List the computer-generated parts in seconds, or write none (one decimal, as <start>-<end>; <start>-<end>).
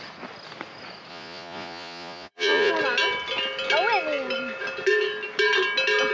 1.1-2.7